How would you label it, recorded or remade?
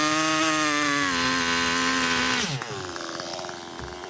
recorded